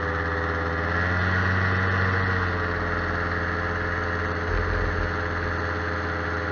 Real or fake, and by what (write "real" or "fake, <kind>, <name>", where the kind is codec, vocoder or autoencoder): real